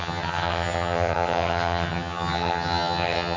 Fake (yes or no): yes